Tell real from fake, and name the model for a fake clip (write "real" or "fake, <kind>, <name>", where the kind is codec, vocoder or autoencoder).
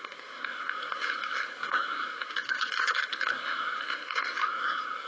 fake, codec, SNAC